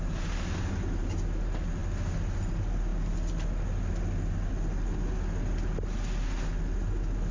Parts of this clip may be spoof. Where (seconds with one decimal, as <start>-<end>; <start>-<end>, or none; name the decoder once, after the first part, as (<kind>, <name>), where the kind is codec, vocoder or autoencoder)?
none